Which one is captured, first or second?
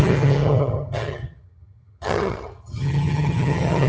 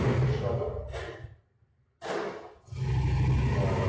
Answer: second